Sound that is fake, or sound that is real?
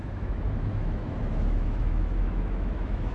fake